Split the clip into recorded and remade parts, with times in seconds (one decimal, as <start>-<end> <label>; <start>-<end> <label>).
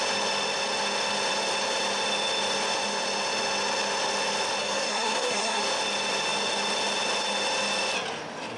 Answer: 0.0-4.6 recorded; 4.6-5.6 remade; 5.6-8.6 recorded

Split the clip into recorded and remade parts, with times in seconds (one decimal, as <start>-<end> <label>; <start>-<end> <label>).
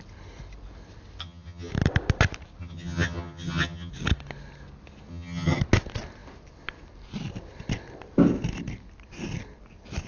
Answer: 0.0-1.2 recorded; 1.2-1.7 remade; 1.7-2.6 recorded; 2.6-3.9 remade; 3.9-5.1 recorded; 5.1-5.6 remade; 5.6-10.1 recorded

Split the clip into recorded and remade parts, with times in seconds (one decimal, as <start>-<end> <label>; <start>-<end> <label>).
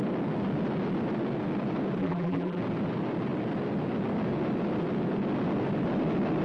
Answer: 0.0-2.0 recorded; 2.0-2.6 remade; 2.6-6.4 recorded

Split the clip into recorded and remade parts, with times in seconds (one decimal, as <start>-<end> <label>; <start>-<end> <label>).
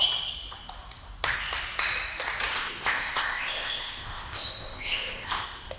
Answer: 0.0-2.5 recorded; 2.5-5.8 remade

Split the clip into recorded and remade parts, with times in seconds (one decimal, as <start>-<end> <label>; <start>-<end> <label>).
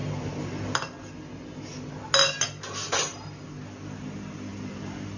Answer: 0.0-5.2 recorded